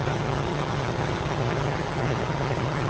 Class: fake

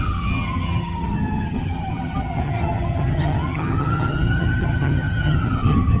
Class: fake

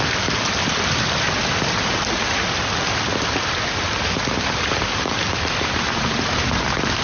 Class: real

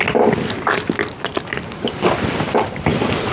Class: real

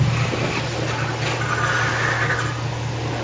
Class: real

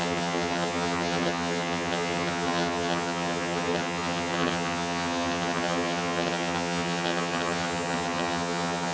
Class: fake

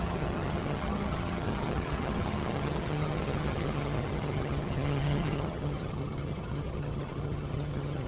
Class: fake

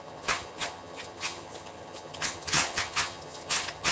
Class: fake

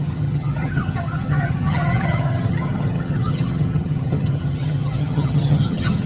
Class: fake